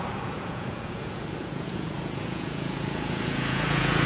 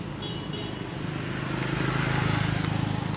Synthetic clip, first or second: first